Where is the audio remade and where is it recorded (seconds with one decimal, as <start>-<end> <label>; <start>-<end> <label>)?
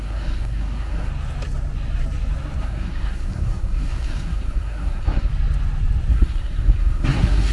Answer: 0.0-1.1 remade; 1.1-2.6 recorded; 2.6-5.3 remade; 5.3-6.1 recorded; 6.1-7.5 remade